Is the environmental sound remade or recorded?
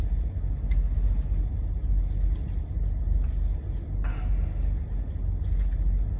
recorded